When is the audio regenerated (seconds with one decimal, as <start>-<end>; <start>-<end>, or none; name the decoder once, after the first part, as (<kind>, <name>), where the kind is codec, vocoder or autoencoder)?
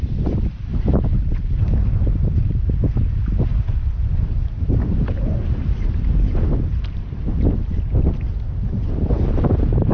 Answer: 0.0-0.7 (vocoder, BigVGAN v2); 5.3-7.3; 8.0-9.9